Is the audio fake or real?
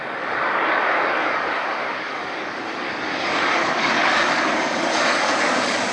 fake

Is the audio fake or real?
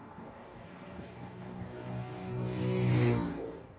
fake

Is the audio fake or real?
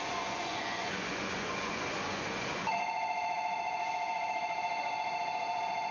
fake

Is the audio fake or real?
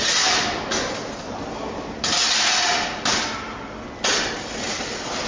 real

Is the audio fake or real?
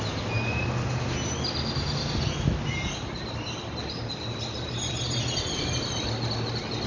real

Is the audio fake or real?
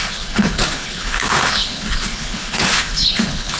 fake